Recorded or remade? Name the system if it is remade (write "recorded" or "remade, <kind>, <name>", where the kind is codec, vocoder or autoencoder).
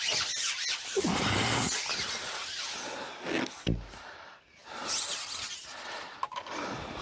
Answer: recorded